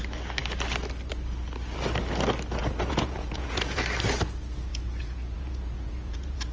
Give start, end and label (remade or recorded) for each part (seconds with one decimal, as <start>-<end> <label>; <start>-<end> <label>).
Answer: 0.0-2.6 recorded; 2.6-3.8 remade; 3.8-4.7 recorded; 4.7-6.5 remade